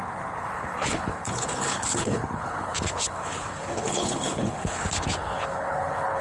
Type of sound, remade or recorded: remade